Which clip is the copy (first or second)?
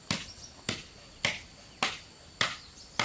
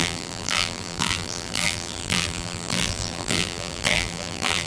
second